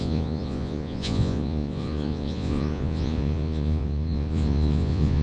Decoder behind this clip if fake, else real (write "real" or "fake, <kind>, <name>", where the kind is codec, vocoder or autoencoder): fake, vocoder, Vocos